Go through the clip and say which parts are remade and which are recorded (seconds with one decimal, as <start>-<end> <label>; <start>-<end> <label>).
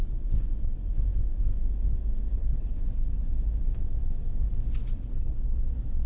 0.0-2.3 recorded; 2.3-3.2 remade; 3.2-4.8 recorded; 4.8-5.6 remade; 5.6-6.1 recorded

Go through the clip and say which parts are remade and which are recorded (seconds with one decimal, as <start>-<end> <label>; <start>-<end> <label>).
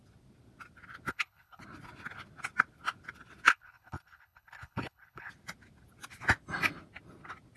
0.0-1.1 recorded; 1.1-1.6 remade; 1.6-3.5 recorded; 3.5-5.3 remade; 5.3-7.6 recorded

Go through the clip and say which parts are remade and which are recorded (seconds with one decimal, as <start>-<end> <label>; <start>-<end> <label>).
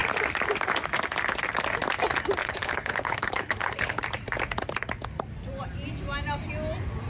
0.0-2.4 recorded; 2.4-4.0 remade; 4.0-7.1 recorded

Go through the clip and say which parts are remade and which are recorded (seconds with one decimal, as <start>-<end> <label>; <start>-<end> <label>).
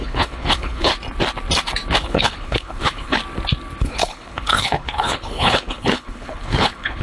0.0-0.9 remade; 0.9-2.0 recorded; 2.0-3.2 remade; 3.2-3.8 recorded; 3.8-7.0 remade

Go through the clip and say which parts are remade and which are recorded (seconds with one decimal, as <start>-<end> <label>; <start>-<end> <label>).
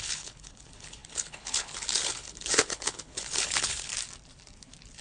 0.0-3.9 remade; 3.9-5.0 recorded